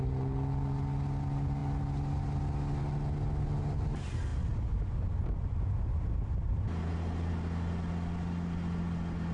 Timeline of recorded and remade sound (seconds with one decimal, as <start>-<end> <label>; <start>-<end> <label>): 0.0-9.3 recorded